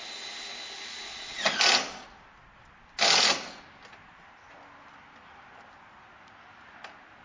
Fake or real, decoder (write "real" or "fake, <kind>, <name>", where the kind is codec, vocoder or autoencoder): real